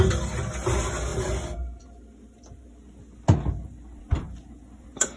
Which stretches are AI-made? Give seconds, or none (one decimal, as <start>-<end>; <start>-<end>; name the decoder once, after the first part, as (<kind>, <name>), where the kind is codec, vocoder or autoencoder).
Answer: none